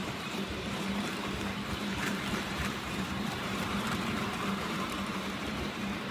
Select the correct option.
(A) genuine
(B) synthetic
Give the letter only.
B